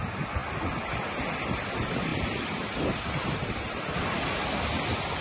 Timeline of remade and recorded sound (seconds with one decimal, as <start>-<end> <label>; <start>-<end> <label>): 0.0-5.2 recorded